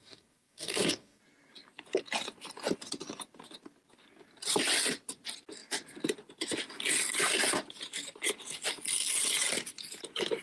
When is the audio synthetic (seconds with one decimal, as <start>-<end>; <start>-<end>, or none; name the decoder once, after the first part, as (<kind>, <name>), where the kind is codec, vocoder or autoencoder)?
0.0-1.2 (codec, DAC)